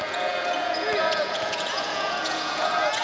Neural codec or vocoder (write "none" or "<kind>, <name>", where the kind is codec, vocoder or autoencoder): vocoder, Vocos